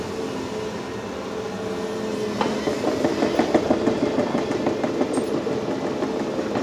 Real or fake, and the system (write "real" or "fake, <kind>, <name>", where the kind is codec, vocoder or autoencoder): real